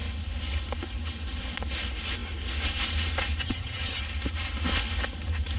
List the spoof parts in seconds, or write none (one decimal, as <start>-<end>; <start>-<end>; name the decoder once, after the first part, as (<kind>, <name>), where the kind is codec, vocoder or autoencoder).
3.4-4.0 (vocoder, HiFi-GAN)